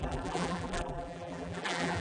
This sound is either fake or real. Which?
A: fake